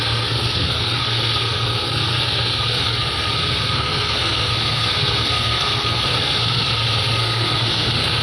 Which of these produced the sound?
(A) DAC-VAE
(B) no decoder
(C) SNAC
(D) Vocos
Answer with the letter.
C